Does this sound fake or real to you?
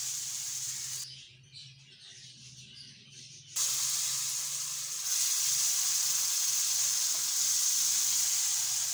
real